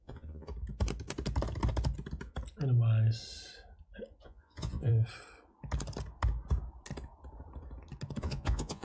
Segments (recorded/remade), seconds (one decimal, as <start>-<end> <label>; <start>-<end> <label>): 0.0-0.5 remade; 0.5-4.2 recorded; 4.2-4.9 remade; 4.9-8.2 recorded; 8.2-8.8 remade